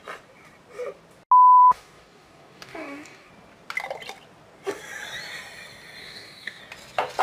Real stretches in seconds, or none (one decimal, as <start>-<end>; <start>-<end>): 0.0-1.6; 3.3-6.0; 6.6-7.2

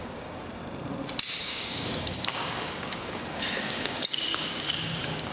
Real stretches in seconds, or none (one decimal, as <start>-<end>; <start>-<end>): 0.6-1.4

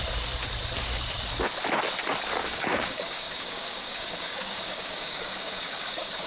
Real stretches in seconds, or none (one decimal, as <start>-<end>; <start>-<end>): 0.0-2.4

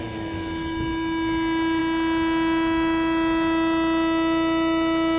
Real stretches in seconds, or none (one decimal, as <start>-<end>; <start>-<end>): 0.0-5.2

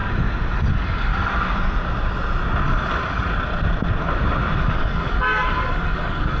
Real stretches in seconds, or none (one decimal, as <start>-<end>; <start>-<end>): 0.0-0.7; 1.1-4.6

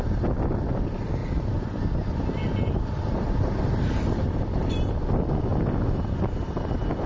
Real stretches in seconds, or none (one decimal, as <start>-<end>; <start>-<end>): 0.0-7.1

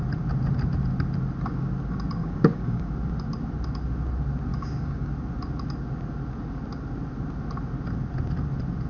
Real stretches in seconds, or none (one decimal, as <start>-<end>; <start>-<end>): 0.0-2.2; 2.9-4.5; 5.1-8.9